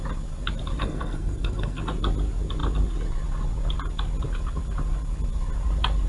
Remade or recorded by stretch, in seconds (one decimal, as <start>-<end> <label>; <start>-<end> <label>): 0.0-0.8 recorded; 0.8-1.8 remade; 1.8-6.1 recorded